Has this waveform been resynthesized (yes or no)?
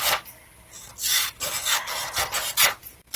no